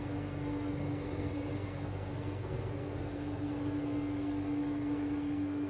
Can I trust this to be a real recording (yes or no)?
no